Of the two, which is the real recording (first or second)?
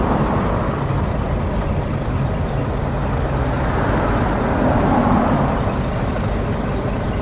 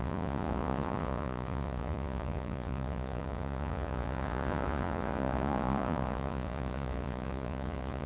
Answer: first